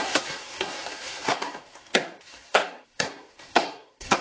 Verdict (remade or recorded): remade